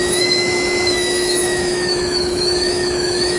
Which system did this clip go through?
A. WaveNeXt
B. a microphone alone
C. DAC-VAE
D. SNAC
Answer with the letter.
C